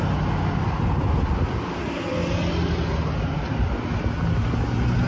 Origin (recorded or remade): recorded